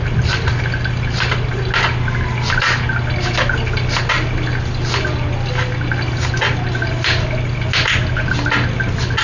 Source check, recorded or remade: recorded